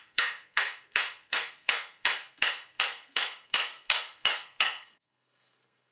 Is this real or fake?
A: fake